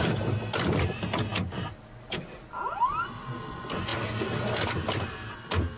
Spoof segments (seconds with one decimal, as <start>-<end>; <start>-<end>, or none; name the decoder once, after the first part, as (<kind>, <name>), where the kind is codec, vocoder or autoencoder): none